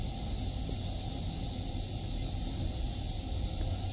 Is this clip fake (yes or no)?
no